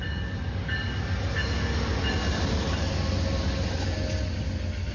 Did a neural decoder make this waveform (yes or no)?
no